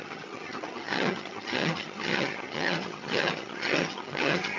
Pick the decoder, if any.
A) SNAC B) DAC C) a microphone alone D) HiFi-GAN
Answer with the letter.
D